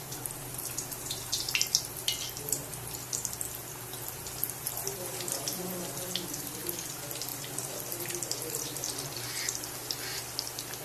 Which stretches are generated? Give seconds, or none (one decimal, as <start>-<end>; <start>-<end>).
none